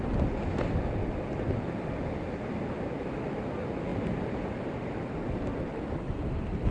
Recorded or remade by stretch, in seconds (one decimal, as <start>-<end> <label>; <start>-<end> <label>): 0.0-2.9 recorded; 2.9-3.5 remade; 3.5-6.7 recorded